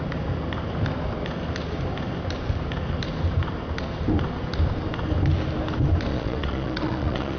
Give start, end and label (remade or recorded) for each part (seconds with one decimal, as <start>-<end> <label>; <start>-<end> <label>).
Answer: 0.0-6.1 recorded; 6.1-7.4 remade